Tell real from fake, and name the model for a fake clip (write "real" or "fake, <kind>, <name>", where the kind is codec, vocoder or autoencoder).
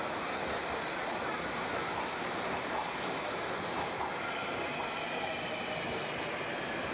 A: real